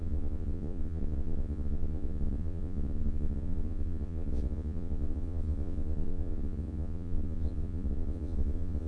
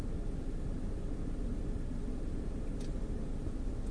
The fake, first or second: first